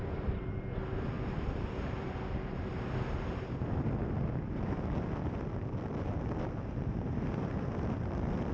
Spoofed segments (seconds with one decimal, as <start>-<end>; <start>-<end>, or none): 0.0-4.0; 6.7-8.5